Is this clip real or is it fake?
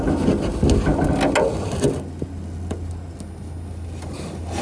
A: real